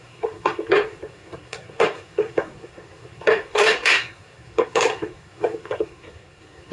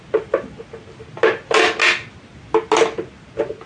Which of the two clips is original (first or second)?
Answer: second